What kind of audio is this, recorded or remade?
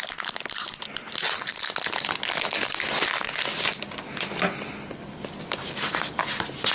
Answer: recorded